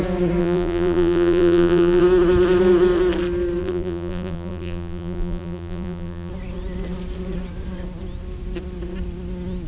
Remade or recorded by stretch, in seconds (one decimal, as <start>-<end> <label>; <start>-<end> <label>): 0.0-0.4 recorded; 0.4-2.0 remade; 2.0-3.6 recorded; 3.6-6.3 remade; 6.3-9.7 recorded